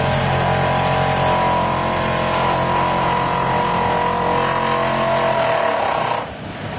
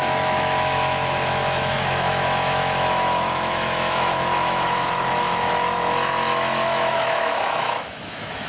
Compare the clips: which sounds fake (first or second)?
second